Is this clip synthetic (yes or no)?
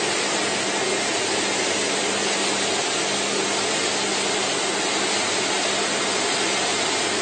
no